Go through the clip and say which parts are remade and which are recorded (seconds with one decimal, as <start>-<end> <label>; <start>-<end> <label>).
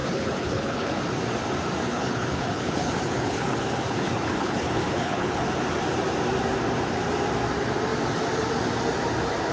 0.0-1.0 remade; 1.0-1.8 recorded; 1.8-5.5 remade; 5.5-9.5 recorded